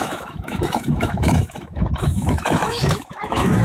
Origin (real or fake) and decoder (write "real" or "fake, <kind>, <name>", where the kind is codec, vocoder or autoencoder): fake, autoencoder, DAC-VAE